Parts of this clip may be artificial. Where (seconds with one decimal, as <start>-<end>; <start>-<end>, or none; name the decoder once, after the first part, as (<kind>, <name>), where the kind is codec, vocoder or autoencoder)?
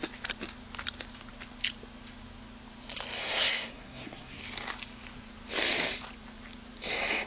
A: 3.2-4.4 (codec, SNAC)